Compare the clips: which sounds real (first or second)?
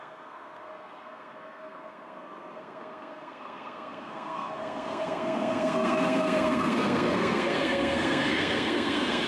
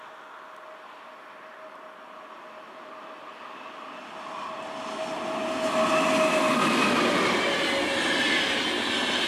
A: second